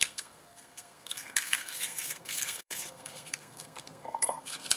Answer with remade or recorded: remade